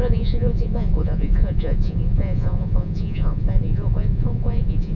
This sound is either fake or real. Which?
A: fake